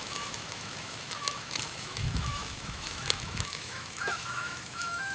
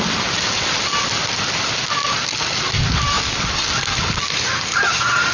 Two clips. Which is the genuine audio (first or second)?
second